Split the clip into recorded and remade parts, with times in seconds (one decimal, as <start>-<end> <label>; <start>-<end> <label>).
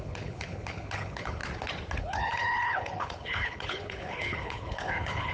0.0-1.4 remade; 1.4-2.0 recorded; 2.0-5.3 remade